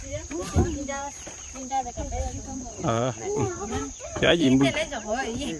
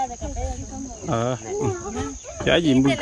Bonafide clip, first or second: second